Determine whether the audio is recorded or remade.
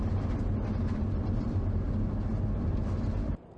recorded